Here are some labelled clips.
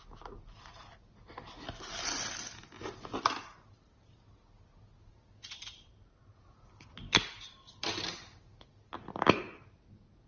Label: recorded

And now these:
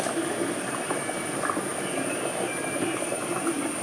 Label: recorded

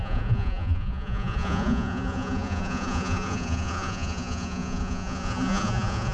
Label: remade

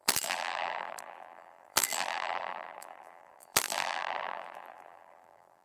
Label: remade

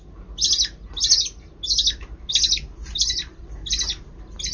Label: recorded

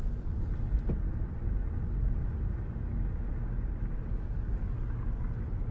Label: recorded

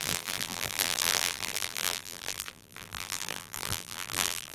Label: remade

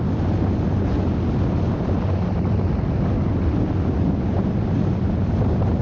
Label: recorded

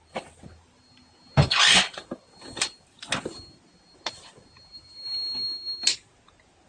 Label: recorded